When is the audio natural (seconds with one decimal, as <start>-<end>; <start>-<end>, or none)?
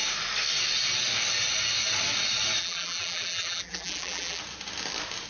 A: 0.0-2.6; 4.4-5.3